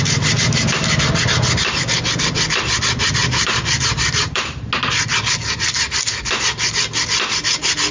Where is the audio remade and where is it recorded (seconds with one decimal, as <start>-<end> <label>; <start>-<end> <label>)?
0.0-3.2 recorded; 3.2-4.7 remade; 4.7-7.9 recorded